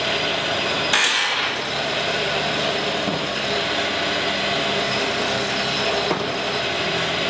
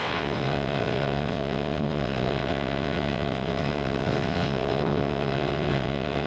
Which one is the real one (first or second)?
first